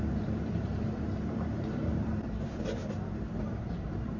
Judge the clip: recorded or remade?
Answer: remade